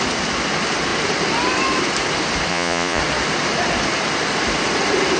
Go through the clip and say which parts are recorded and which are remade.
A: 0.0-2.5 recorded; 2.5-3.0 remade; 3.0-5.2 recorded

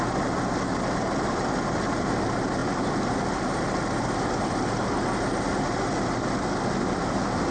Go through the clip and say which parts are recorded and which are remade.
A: 0.0-7.5 recorded